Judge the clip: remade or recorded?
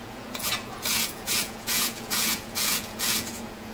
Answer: remade